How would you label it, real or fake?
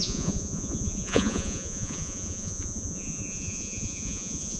fake